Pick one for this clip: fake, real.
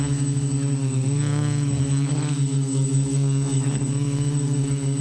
fake